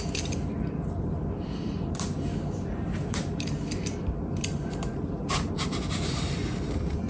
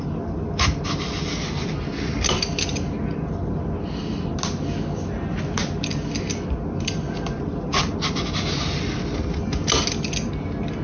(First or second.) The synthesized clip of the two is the first